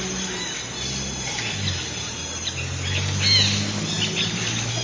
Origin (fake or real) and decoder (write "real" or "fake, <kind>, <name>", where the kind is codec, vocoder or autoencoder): real